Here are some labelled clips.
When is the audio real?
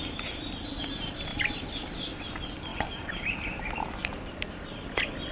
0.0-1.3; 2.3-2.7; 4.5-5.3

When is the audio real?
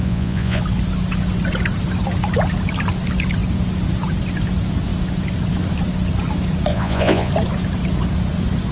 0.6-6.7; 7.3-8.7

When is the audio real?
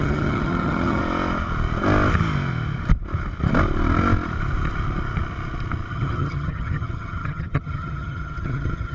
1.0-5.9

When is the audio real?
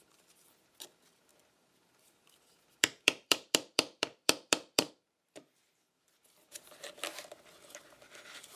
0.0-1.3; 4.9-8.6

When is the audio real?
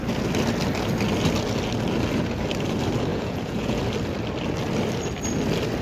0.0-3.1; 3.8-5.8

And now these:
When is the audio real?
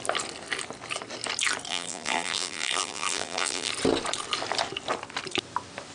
0.0-1.7; 3.7-5.9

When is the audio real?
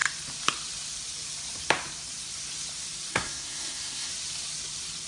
0.0-3.1; 4.1-5.1